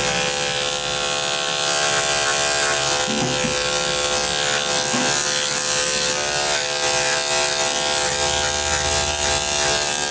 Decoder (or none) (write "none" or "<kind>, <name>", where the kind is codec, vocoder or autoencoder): none